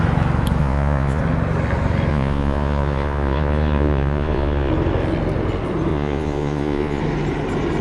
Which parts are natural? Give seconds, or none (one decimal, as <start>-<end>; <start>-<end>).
0.0-0.6; 1.2-2.1; 4.7-5.9; 7.0-7.8